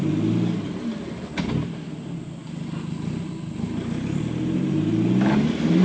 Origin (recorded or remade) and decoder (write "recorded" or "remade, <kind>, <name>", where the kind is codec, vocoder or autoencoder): recorded